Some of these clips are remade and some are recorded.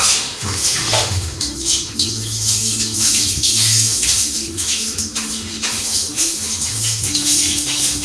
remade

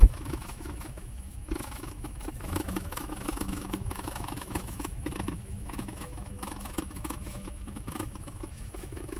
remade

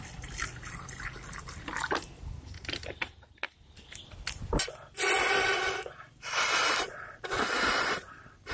recorded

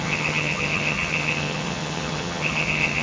remade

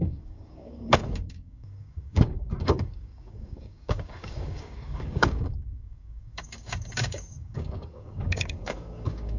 remade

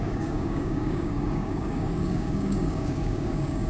remade